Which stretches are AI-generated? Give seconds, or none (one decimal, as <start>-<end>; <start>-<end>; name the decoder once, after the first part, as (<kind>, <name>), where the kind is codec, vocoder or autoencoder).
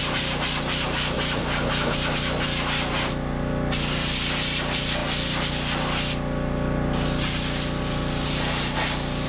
none